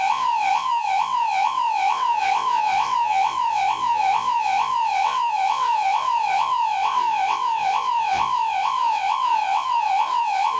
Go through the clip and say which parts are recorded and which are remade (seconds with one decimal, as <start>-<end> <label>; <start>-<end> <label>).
0.0-10.6 remade